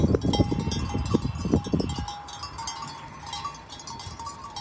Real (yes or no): yes